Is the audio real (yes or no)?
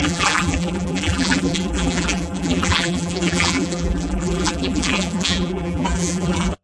no